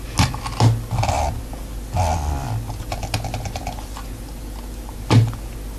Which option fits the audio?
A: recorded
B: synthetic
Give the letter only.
A